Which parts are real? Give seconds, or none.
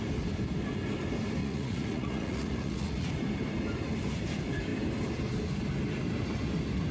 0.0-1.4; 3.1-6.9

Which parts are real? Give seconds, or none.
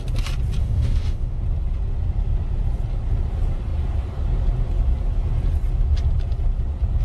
0.0-0.6; 1.4-7.0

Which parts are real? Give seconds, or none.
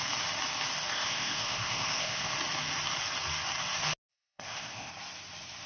0.0-0.9; 2.3-4.1; 4.9-5.7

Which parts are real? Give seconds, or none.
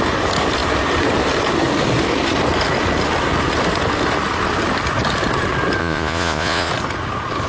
0.0-5.8; 6.7-7.5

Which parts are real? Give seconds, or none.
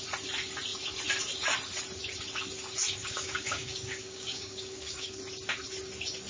0.0-3.0; 5.2-6.3